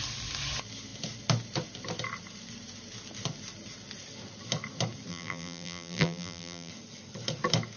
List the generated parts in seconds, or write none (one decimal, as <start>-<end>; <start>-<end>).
5.1-6.7